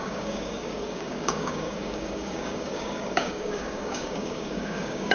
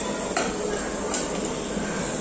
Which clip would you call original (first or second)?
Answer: second